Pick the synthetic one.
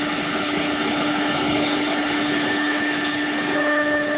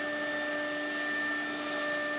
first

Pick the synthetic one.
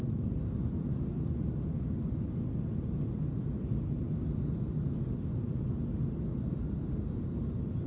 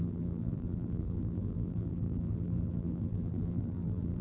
second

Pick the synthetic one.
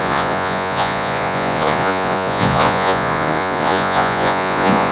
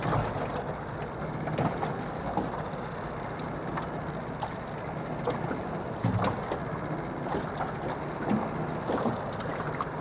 first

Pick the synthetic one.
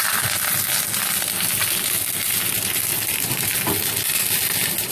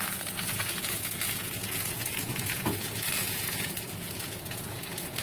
second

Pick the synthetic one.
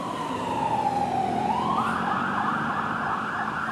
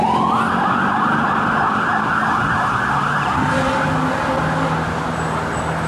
first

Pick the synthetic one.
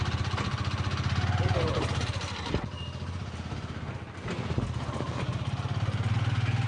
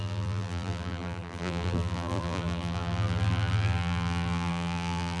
second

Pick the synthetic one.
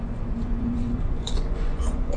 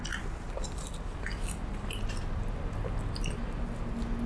first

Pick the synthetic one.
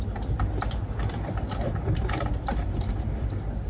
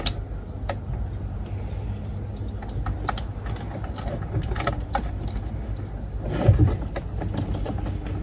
first